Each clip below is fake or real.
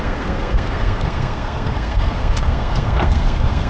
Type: fake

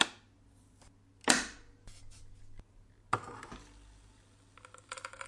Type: real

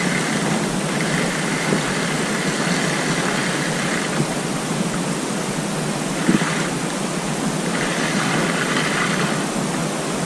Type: real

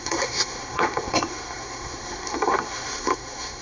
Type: fake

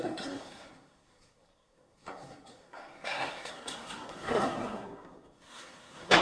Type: fake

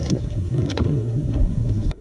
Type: fake